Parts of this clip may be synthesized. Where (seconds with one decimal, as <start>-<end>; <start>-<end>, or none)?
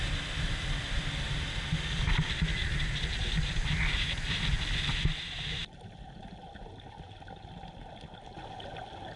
none